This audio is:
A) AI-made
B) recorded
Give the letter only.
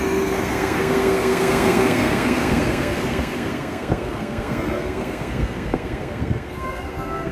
A